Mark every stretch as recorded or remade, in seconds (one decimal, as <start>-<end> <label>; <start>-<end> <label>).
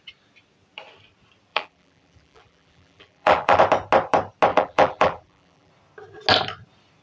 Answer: 0.0-1.5 recorded; 1.5-3.6 remade; 3.6-4.5 recorded; 4.5-5.7 remade; 5.7-7.0 recorded